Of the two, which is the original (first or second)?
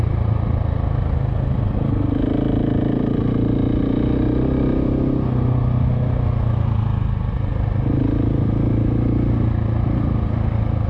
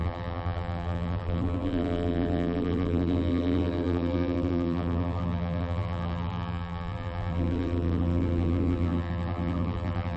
first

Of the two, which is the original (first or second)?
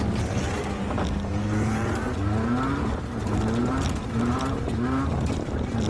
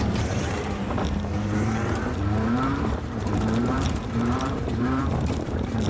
first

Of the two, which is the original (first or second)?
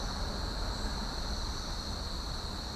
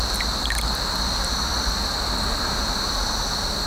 second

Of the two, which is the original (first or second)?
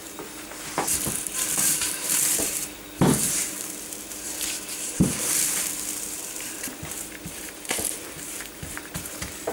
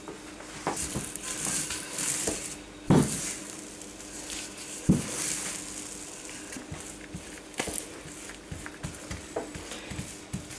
second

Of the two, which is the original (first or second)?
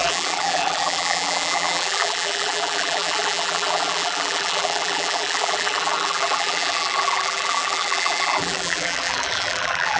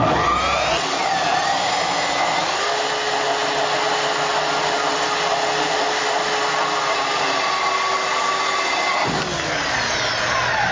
second